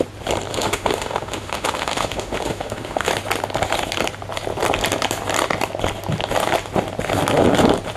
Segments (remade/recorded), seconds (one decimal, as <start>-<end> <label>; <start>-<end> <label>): 0.0-0.5 recorded; 0.5-3.1 remade; 3.1-8.0 recorded